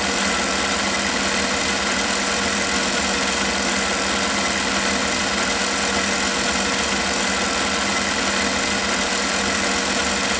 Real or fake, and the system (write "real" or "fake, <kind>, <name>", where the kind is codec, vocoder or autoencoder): real